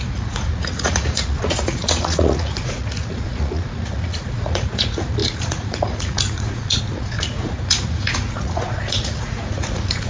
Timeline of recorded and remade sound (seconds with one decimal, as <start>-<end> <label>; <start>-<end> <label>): 0.0-10.1 remade